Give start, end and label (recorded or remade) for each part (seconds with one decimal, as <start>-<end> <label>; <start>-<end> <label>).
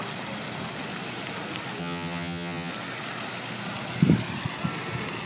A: 0.0-1.8 recorded; 1.8-2.7 remade; 2.7-5.3 recorded